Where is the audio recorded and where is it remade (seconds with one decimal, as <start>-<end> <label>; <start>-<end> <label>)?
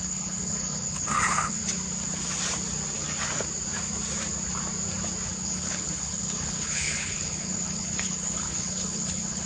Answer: 0.0-1.6 remade; 1.6-5.3 recorded; 5.3-9.5 remade